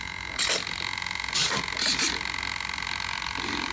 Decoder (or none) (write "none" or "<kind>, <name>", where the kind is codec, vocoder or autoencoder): none